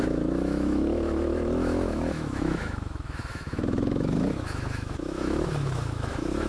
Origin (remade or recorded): remade